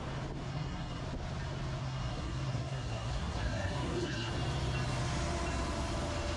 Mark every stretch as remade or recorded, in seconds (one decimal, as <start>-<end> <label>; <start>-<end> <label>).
0.0-0.5 recorded; 0.5-1.0 remade; 1.0-1.8 recorded; 1.8-4.3 remade; 4.3-6.4 recorded